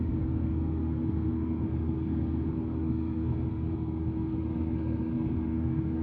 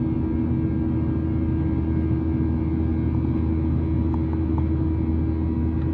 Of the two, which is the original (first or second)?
second